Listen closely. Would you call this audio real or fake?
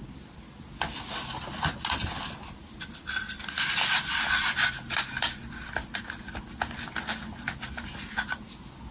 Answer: real